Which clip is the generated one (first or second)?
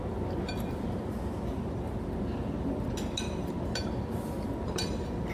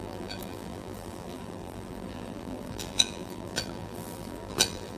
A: second